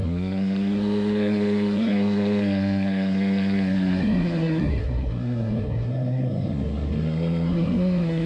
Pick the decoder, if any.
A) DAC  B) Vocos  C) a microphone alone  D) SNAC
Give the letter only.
D